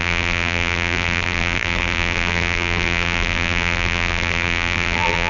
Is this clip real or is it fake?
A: fake